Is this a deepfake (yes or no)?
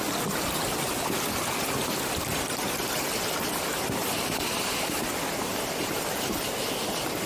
no